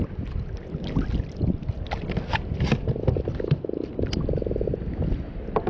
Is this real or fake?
real